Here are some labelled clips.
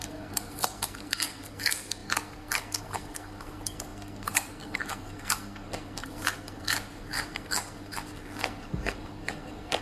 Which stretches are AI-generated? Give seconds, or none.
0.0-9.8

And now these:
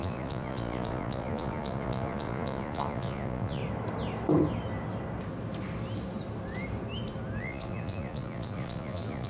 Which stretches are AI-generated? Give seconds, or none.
0.0-3.6; 7.4-9.3

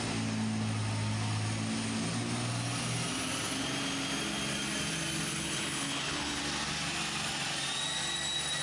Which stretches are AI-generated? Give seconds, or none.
5.3-6.4

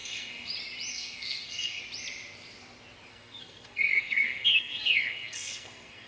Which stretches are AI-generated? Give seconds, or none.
0.0-0.5; 0.9-1.8; 3.1-6.1

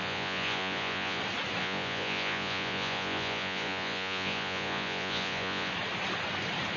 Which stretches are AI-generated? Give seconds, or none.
0.0-1.2; 1.6-5.7